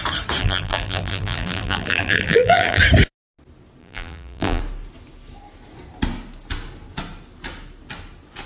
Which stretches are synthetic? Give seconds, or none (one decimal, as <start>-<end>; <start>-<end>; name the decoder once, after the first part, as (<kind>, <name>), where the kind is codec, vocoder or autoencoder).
0.4-2.8 (vocoder, BigVGAN v2); 3.8-4.6